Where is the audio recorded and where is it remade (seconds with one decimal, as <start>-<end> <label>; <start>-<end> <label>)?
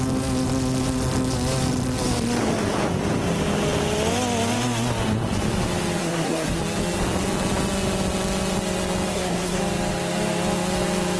0.0-6.0 recorded; 6.0-6.6 remade; 6.6-9.1 recorded; 9.1-9.6 remade; 9.6-11.2 recorded